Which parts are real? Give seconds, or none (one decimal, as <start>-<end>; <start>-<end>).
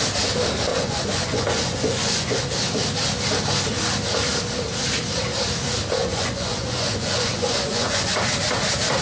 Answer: 0.0-0.7; 2.4-6.0; 8.2-9.0